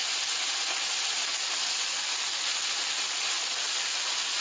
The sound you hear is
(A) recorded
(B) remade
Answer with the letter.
A